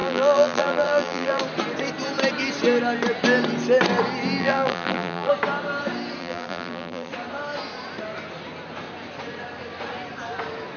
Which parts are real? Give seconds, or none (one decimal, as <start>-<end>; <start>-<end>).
1.4-4.4; 5.3-6.2; 7.1-10.8